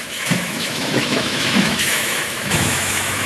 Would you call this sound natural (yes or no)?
no